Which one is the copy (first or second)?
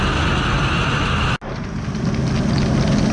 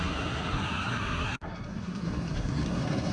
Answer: second